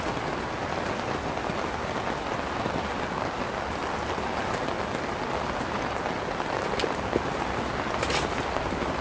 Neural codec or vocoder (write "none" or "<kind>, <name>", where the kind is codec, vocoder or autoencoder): none